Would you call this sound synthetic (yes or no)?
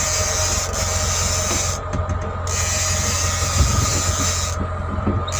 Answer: no